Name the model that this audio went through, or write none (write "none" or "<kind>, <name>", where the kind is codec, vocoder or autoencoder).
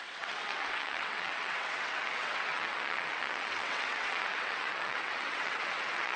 vocoder, WaveNeXt